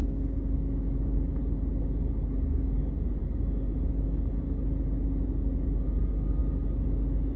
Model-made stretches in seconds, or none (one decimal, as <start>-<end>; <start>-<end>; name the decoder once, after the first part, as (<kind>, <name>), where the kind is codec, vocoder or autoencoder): 0.0-1.4 (autoencoder, DAC-VAE)